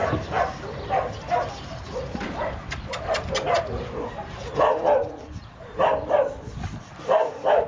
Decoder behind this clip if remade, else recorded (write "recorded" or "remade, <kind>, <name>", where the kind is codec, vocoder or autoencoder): recorded